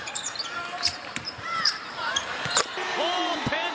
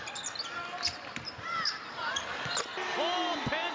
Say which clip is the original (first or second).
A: second